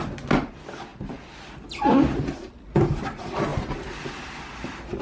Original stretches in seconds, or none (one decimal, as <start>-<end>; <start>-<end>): 0.0-5.0